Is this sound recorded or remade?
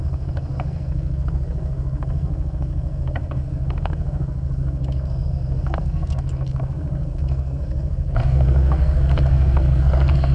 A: remade